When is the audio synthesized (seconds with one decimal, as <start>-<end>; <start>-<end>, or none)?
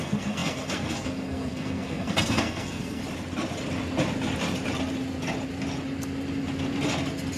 0.0-3.0